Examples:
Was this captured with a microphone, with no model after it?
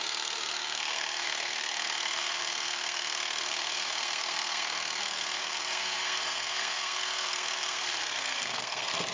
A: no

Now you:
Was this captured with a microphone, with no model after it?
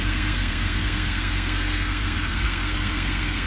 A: no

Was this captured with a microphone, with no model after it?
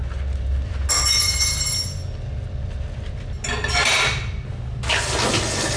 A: yes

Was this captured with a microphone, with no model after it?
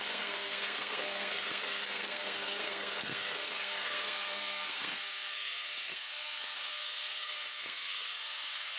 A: no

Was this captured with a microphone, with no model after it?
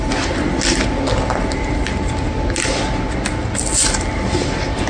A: yes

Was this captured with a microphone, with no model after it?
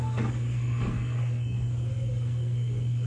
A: no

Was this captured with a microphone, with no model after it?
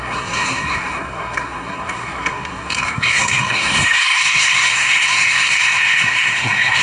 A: no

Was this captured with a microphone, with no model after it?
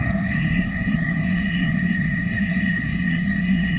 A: no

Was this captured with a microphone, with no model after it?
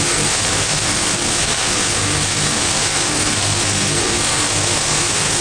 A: no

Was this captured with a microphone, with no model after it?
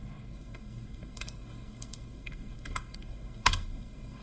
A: no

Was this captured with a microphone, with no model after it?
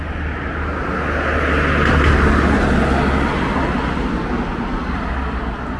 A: yes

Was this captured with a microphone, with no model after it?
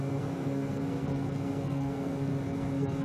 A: no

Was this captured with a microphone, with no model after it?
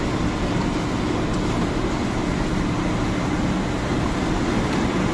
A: yes